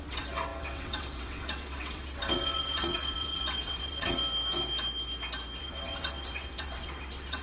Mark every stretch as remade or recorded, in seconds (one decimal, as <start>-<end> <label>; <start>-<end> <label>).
0.0-4.2 remade; 4.2-5.6 recorded; 5.6-7.4 remade

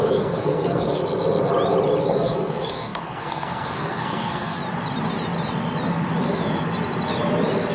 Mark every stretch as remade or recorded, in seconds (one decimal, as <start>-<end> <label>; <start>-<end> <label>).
0.0-1.0 remade; 1.0-2.0 recorded; 2.0-4.6 remade; 4.6-7.7 recorded